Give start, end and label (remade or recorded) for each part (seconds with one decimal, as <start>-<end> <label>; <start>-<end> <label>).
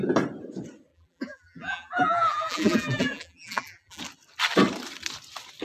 0.0-0.9 recorded; 0.9-4.0 remade; 4.0-5.6 recorded